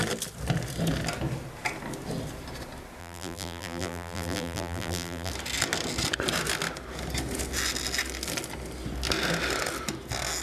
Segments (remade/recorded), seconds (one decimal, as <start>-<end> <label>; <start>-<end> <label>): 0.0-3.0 recorded; 3.0-5.3 remade; 5.3-10.4 recorded